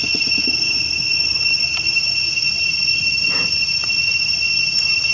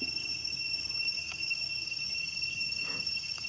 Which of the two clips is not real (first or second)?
second